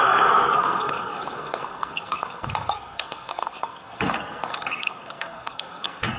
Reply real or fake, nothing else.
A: fake